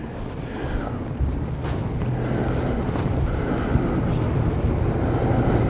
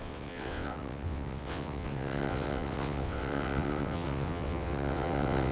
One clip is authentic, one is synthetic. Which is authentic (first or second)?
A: first